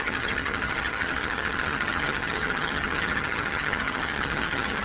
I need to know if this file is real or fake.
fake